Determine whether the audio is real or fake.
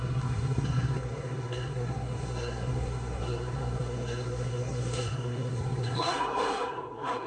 fake